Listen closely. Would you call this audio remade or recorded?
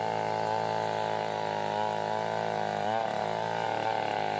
remade